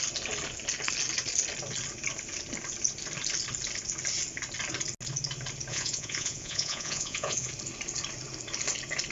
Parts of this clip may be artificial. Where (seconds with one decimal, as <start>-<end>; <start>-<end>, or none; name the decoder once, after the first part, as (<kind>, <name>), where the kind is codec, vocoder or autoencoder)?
5.7-7.5 (vocoder, Vocos)